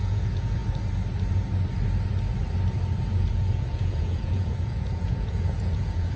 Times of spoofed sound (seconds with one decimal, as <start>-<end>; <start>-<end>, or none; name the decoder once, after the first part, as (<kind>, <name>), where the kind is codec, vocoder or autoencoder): 0.0-0.6 (vocoder, Vocos); 3.3-6.2